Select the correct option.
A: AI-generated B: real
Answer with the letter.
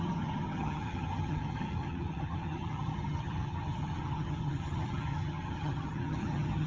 A